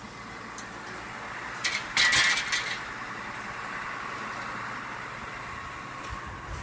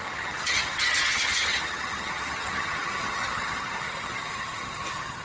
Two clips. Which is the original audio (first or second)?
first